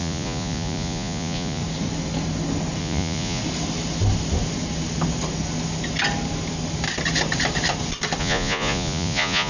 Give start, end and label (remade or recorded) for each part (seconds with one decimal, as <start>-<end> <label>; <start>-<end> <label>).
0.0-1.6 remade; 1.6-2.8 recorded; 2.8-3.4 remade; 3.4-8.2 recorded; 8.2-9.5 remade